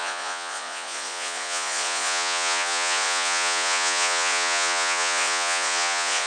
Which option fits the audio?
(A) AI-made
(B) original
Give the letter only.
A